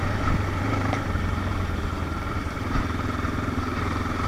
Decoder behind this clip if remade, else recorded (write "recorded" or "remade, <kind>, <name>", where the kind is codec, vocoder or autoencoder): remade, vocoder, BigVGAN v2